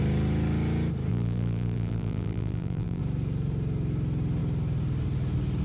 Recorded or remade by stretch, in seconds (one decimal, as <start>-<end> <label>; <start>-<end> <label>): 0.0-1.1 recorded; 1.1-3.0 remade; 3.0-5.6 recorded